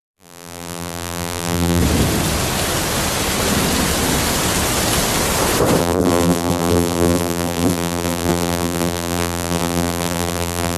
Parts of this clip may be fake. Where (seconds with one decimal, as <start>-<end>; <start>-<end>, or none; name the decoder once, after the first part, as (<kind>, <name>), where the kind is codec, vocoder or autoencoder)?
0.0-1.8 (vocoder, BigVGAN v2); 5.8-10.8